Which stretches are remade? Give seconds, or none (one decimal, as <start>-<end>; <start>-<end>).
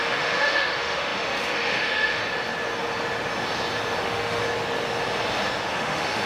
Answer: 0.0-2.2; 4.0-4.4; 5.7-6.3